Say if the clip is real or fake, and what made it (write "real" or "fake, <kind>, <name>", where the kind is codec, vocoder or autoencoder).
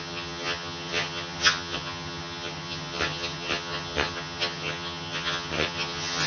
fake, vocoder, HiFi-GAN